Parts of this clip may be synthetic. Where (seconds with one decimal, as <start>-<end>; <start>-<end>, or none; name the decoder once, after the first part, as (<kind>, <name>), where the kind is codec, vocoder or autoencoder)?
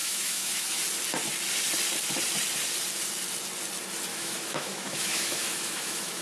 0.0-0.8 (autoencoder, DAC-VAE); 4.1-6.2